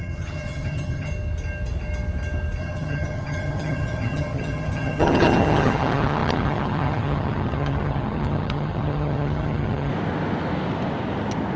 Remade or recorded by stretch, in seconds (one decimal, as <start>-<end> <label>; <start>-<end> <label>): 0.0-1.1 remade; 1.1-2.6 recorded; 2.6-9.9 remade; 9.9-11.6 recorded

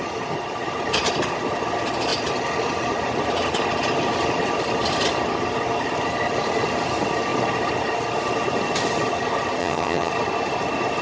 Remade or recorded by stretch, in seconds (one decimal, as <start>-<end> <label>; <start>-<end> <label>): 0.0-9.6 recorded; 9.6-10.1 remade; 10.1-11.0 recorded

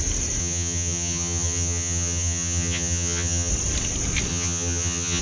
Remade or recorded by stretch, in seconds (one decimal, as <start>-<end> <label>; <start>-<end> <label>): 0.0-0.4 recorded; 0.4-3.5 remade; 3.5-4.3 recorded; 4.3-5.2 remade

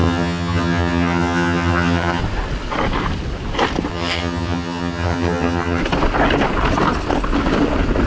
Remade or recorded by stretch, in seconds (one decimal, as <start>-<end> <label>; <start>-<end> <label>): 0.0-2.2 remade; 2.2-3.9 recorded; 3.9-5.8 remade; 5.8-8.1 recorded

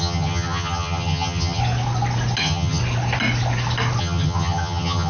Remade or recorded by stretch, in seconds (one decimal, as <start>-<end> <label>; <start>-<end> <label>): 0.0-1.6 remade; 1.6-2.4 recorded; 2.4-2.8 remade; 2.8-4.0 recorded; 4.0-5.1 remade